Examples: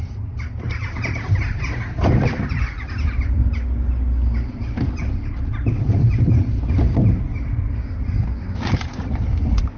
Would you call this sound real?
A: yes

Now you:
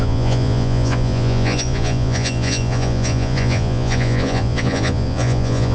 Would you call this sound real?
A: no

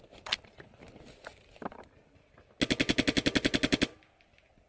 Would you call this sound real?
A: yes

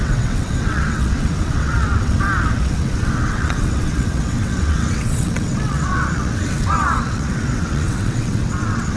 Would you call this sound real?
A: no